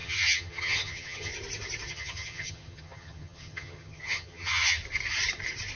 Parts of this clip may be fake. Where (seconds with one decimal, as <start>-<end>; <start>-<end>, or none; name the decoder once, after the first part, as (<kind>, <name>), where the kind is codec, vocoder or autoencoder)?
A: 0.0-1.3 (vocoder, HiFi-GAN); 1.9-4.8